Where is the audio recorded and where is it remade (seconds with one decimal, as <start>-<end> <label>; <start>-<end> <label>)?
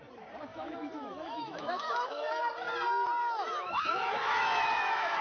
0.0-0.5 recorded; 0.5-2.4 remade; 2.4-3.2 recorded; 3.2-5.2 remade